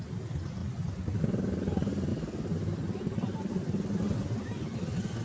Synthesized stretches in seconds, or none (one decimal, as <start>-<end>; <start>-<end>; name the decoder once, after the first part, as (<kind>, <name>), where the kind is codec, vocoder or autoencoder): none